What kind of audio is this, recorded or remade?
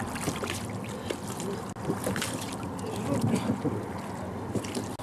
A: recorded